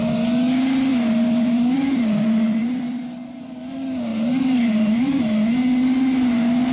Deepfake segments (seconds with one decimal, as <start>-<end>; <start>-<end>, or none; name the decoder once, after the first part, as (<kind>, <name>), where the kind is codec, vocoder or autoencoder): 0.9-3.0 (vocoder, BigVGAN v2); 4.1-5.2